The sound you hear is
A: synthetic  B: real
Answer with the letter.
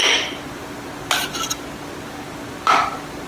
B